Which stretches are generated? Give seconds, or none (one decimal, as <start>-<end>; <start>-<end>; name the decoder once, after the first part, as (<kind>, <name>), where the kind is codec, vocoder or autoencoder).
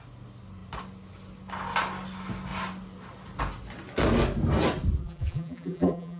5.0-6.2 (vocoder, BigVGAN v2)